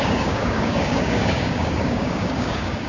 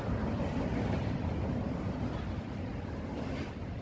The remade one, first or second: first